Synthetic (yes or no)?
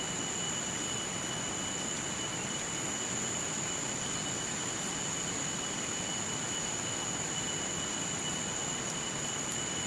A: no